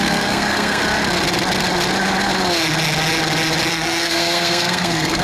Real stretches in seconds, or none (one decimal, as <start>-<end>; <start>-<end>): 0.8-3.7